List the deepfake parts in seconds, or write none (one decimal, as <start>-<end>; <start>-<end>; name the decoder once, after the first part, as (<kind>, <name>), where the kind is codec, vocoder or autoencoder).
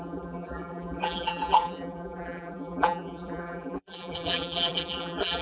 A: 0.0-5.4 (vocoder, BigVGAN v2)